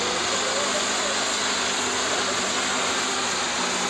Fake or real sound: real